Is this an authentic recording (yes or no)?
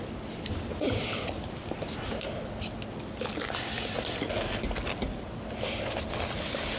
yes